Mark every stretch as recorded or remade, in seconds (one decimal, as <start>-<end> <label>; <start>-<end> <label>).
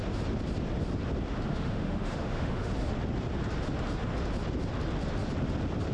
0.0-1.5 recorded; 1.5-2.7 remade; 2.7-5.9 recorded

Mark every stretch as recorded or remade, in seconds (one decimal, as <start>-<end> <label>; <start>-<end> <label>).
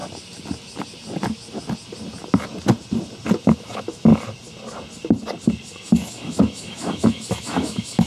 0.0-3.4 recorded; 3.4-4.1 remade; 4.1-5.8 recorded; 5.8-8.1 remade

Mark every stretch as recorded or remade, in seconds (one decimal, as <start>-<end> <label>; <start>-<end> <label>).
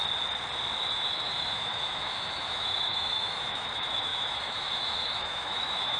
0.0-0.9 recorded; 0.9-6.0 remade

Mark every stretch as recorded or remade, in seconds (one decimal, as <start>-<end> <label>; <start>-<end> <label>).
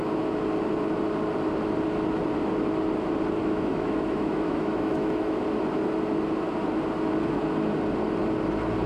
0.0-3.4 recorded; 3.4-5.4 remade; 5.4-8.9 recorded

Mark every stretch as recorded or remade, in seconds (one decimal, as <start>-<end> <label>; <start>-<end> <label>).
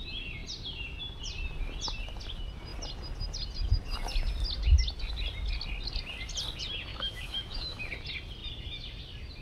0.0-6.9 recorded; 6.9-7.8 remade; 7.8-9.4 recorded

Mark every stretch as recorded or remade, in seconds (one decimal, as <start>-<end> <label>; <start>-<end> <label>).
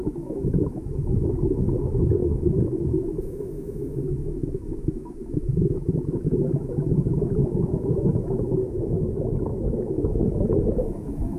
0.0-10.2 remade; 10.2-11.0 recorded; 11.0-11.4 remade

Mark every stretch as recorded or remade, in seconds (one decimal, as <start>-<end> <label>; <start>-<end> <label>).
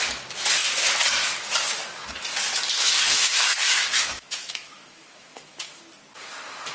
0.0-2.8 recorded; 2.8-5.8 remade; 5.8-6.7 recorded